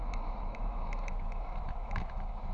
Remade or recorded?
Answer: remade